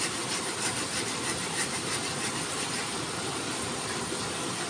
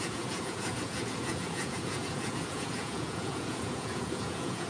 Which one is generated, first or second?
second